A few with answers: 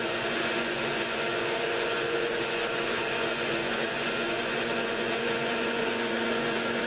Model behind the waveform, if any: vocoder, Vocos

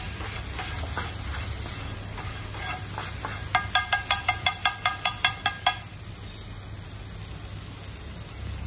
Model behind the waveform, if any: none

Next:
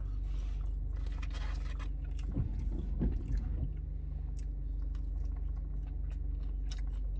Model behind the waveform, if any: none